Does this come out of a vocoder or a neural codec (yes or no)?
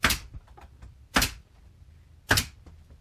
no